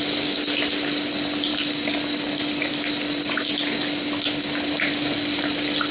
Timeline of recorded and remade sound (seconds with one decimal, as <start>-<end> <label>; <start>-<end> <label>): 0.0-5.9 recorded